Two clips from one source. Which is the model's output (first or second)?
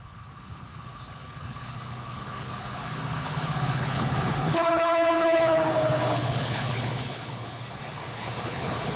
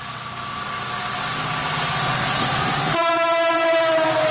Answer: first